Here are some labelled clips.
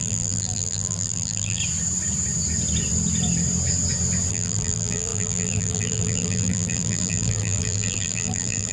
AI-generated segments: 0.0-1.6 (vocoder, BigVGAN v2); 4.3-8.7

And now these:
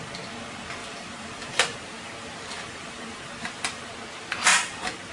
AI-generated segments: 0.8-3.9 (vocoder, BigVGAN v2); 4.5-5.1

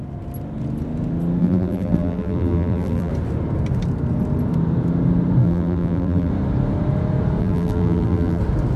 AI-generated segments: 1.4-3.1 (vocoder, BigVGAN v2); 5.4-6.3; 7.4-8.4

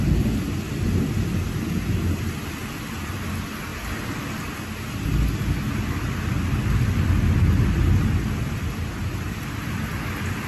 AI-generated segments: none

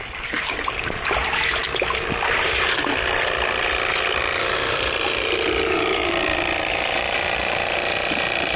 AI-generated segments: 0.0-1.6 (vocoder, BigVGAN v2); 2.3-2.9; 4.2-6.0; 6.7-8.6

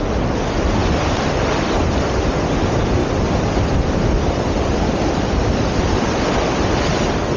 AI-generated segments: 3.0-6.2 (vocoder, BigVGAN v2)

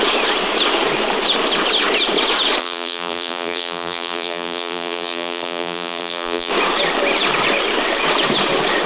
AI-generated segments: 2.6-6.5 (vocoder, BigVGAN v2)